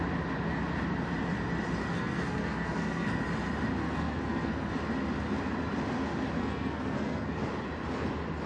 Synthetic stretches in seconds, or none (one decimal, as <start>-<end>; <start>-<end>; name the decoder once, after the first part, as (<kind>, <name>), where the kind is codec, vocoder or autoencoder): 1.8-3.2 (codec, SNAC); 3.8-4.7; 6.4-7.4